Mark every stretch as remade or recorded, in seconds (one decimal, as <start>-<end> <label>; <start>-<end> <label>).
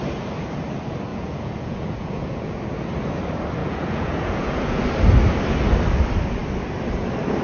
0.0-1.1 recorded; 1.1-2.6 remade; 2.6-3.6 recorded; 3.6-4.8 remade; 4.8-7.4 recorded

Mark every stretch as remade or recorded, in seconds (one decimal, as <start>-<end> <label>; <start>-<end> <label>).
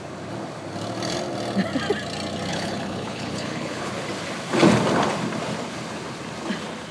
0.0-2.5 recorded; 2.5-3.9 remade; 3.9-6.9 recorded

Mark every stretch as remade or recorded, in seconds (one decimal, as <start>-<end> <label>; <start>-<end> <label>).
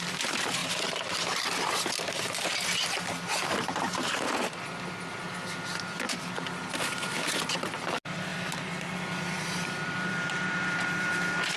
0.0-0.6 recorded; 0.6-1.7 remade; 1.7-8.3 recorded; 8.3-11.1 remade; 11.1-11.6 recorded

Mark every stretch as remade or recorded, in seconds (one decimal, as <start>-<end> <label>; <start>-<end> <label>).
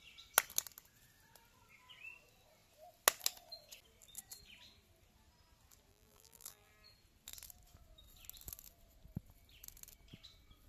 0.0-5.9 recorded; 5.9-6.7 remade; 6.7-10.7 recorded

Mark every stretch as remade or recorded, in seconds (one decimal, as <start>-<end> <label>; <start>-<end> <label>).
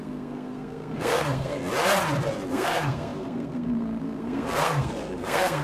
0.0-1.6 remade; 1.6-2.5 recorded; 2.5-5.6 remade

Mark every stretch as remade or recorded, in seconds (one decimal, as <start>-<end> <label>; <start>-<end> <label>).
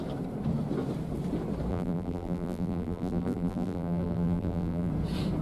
0.0-1.7 recorded; 1.7-4.9 remade; 4.9-5.4 recorded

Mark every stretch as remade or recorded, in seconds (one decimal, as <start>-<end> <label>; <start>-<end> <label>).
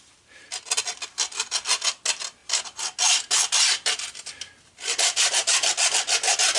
0.0-6.6 recorded